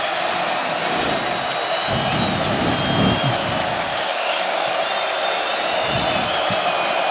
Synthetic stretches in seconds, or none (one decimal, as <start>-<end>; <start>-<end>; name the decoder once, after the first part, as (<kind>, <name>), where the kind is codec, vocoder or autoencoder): 3.9-4.7 (codec, DAC)